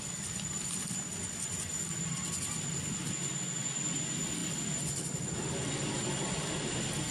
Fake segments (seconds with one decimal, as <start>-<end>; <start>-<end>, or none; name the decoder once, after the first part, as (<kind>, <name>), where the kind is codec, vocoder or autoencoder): none